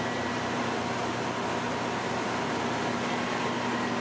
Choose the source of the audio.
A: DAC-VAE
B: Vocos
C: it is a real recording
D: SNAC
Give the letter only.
C